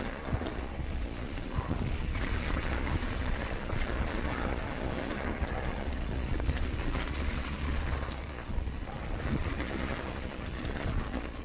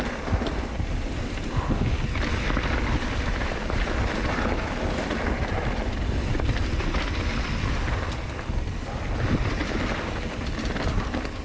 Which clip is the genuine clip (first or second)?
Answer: second